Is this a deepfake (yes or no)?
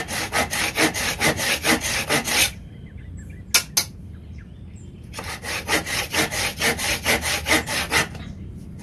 no